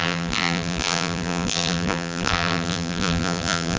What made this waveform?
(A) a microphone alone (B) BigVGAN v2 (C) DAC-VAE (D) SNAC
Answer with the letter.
B